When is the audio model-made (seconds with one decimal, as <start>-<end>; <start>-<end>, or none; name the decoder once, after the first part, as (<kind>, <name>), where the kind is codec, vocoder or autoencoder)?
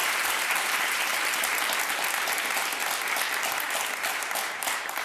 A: 0.0-1.1 (vocoder, BigVGAN v2); 4.1-5.0